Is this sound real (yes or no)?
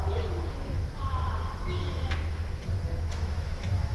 no